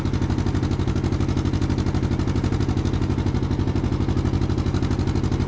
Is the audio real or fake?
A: real